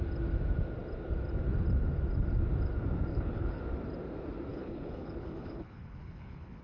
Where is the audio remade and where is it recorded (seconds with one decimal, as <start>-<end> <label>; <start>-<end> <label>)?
0.0-3.1 recorded; 3.1-3.6 remade; 3.6-4.5 recorded; 4.5-6.6 remade